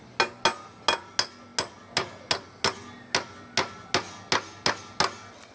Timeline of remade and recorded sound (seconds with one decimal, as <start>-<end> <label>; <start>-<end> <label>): 0.0-5.5 recorded